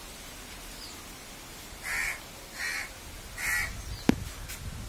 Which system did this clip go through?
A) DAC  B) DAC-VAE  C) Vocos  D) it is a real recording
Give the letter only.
D